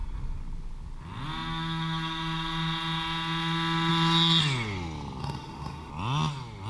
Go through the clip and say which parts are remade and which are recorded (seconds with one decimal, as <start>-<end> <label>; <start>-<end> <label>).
0.0-5.2 recorded; 5.2-5.9 remade; 5.9-6.7 recorded